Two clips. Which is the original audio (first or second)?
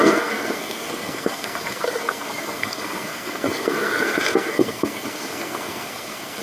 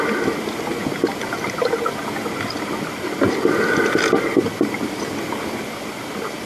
second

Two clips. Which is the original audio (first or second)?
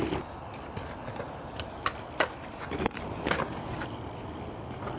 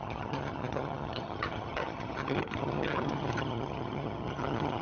first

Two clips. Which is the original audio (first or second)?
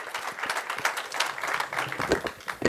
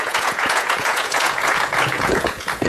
first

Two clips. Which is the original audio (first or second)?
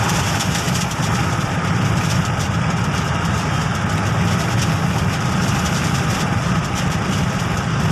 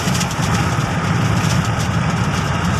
second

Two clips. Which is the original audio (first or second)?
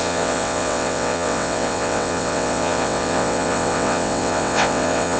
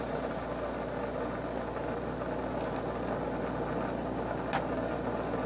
second